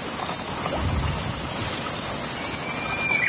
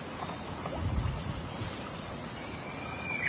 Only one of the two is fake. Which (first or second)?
second